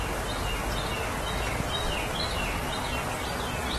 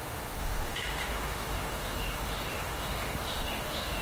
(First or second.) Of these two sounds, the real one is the first